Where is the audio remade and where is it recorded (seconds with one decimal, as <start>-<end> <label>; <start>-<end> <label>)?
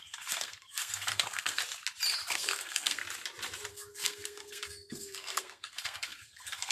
0.0-1.6 remade; 1.6-2.3 recorded; 2.3-3.0 remade; 3.0-3.7 recorded; 3.7-6.7 remade